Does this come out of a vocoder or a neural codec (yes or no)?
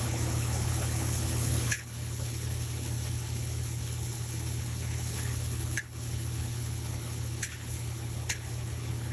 yes